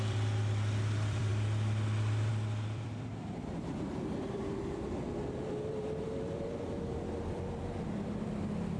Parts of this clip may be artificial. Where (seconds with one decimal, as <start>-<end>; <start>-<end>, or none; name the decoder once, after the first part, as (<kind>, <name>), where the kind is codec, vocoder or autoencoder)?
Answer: 0.0-1.3 (vocoder, BigVGAN v2); 2.3-8.8